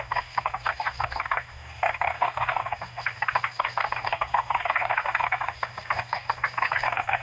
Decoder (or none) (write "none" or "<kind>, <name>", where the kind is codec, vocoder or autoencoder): codec, DAC